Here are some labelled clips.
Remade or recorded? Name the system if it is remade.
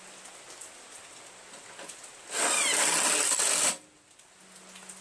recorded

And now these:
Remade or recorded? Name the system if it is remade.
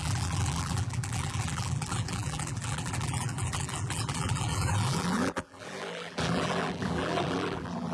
remade, vocoder, BigVGAN v2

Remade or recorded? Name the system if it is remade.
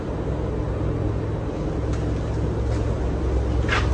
recorded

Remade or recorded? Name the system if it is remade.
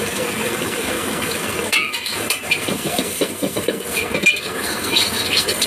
remade, codec, SNAC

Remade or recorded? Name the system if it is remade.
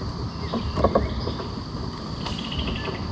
recorded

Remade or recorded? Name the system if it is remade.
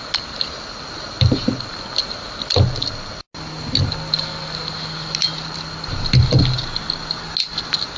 recorded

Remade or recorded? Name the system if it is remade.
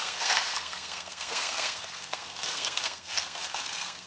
remade, codec, SNAC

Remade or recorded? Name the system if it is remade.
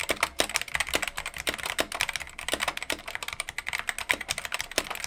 recorded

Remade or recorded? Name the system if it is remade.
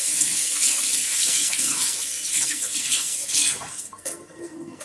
remade, codec, SNAC